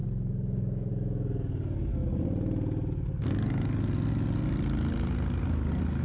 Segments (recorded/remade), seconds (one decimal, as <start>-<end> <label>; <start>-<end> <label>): 0.0-0.9 remade; 0.9-6.0 recorded